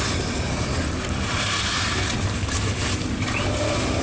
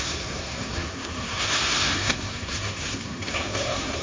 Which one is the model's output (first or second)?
second